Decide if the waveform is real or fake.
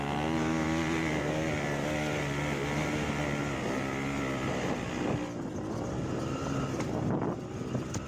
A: real